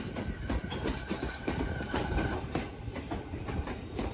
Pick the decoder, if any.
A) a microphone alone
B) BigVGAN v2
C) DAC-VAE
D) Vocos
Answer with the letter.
B